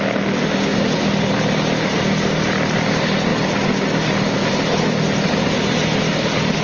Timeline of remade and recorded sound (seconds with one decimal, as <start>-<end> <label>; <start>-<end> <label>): 0.0-6.6 recorded